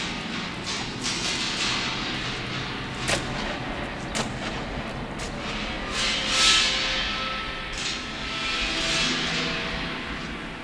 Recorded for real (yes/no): yes